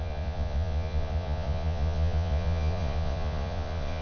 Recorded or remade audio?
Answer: remade